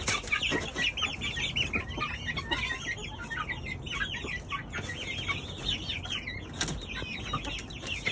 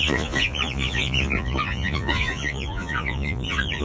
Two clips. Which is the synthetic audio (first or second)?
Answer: second